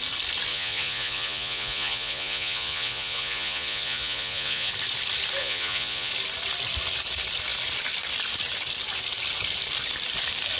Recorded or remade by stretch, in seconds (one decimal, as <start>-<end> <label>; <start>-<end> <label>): 0.0-0.5 recorded; 0.5-4.7 remade; 4.7-5.4 recorded; 5.4-6.1 remade; 6.1-10.6 recorded